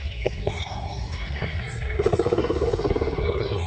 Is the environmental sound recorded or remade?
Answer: remade